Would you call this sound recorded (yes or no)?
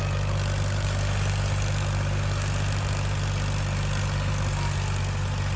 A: yes